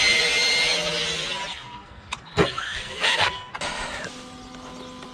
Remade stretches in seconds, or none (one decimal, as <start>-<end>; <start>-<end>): 1.5-3.5